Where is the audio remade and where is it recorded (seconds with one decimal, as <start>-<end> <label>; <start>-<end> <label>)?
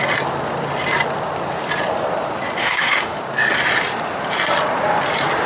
0.0-2.6 recorded; 2.6-3.2 remade; 3.2-5.5 recorded